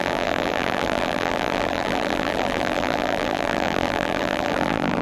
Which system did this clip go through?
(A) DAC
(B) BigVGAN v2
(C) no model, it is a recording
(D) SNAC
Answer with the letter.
B